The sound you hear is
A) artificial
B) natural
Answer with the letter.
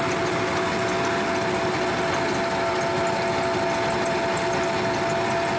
B